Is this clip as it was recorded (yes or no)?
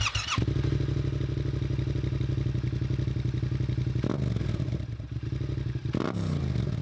yes